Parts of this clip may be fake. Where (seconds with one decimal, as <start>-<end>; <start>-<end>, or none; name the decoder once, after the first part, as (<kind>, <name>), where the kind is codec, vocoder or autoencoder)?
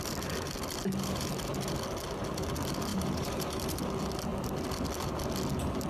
2.9-3.8 (vocoder, BigVGAN v2)